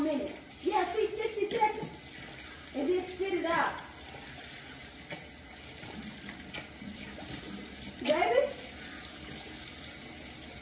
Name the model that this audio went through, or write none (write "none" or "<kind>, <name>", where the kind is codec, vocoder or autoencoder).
none